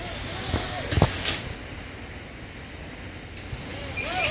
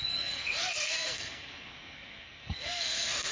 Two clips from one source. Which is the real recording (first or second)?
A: first